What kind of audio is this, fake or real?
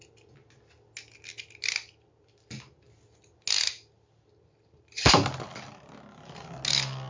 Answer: real